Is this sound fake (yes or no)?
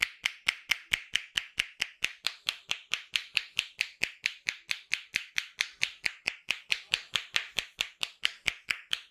no